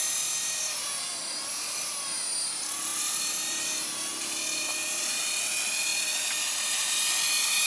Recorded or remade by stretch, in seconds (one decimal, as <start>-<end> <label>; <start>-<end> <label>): 0.0-7.7 recorded